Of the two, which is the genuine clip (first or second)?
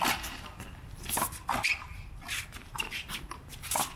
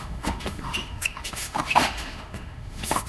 first